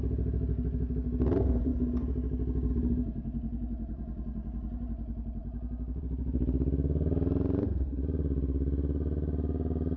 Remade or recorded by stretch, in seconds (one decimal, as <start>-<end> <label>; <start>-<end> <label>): 0.0-10.0 recorded